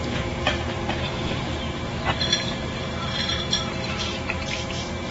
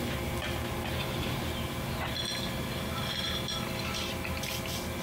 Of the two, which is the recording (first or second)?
second